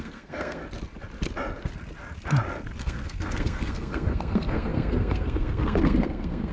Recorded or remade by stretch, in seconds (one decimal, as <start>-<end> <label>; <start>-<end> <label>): 0.0-0.6 remade; 0.6-2.8 recorded; 2.8-6.5 remade